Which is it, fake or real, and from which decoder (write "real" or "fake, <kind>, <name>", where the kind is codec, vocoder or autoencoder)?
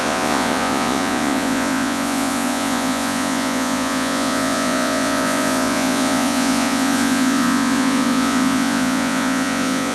fake, vocoder, Vocos